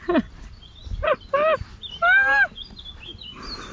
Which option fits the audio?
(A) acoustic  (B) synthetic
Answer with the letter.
A